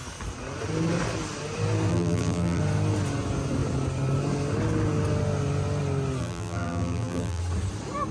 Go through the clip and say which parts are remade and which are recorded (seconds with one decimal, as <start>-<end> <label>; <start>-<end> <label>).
0.0-1.9 recorded; 1.9-2.6 remade; 2.6-6.2 recorded; 6.2-7.4 remade; 7.4-8.1 recorded